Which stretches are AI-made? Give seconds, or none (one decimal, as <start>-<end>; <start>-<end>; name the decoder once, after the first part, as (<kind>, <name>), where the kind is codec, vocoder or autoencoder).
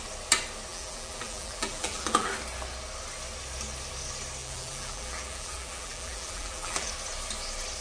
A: 0.7-2.3 (vocoder, BigVGAN v2); 4.4-6.9